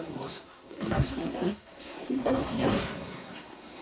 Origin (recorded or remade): remade